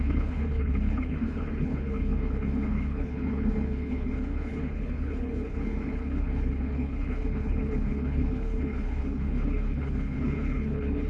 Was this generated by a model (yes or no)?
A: yes